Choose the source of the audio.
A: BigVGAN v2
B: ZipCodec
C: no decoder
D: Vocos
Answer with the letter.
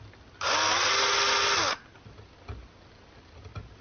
C